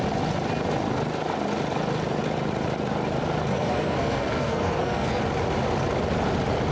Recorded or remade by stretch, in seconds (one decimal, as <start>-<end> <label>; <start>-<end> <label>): 0.0-3.5 recorded; 3.5-5.2 remade; 5.2-6.7 recorded